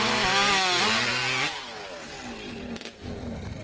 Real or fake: real